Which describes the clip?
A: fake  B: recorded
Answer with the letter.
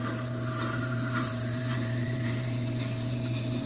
A